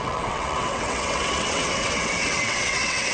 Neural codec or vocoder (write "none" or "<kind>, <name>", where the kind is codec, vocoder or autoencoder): vocoder, WaveNeXt